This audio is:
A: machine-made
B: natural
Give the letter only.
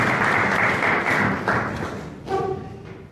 B